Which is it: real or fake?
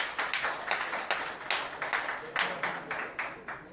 real